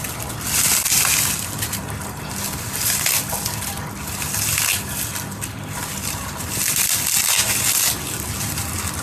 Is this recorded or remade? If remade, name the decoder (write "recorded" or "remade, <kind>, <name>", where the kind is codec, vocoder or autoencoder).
recorded